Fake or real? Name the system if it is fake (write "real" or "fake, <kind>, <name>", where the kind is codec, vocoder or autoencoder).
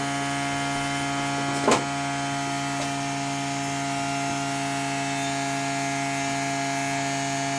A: real